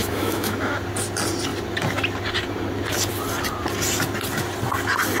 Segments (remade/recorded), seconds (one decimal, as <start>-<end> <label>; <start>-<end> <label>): 0.0-0.8 remade; 0.8-5.2 recorded